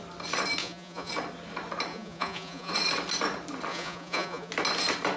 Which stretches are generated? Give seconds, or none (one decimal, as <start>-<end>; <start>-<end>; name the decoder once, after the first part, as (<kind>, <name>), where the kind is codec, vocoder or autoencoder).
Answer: 0.6-1.1 (vocoder, Vocos); 1.9-2.7; 3.7-4.5